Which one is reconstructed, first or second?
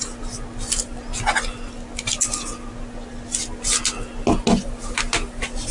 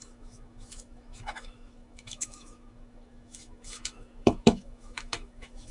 second